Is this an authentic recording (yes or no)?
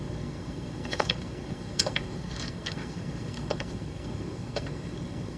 no